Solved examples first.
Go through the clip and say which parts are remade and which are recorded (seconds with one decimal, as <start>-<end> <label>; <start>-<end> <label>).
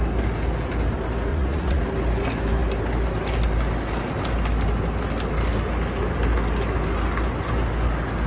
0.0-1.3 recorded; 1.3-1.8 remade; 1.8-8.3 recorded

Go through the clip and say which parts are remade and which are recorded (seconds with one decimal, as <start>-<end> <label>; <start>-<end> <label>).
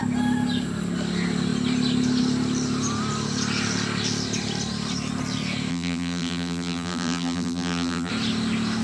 0.0-5.7 recorded; 5.7-8.1 remade; 8.1-8.8 recorded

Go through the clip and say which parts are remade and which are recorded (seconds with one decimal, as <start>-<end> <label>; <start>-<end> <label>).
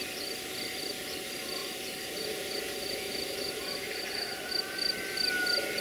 0.0-1.6 recorded; 1.6-4.5 remade; 4.5-5.8 recorded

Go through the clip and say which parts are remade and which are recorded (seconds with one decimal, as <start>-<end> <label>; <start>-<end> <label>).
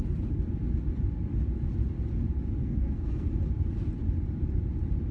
0.0-2.6 recorded; 2.6-3.3 remade; 3.3-5.1 recorded